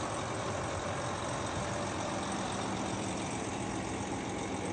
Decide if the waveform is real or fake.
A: fake